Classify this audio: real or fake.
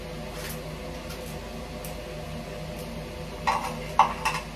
real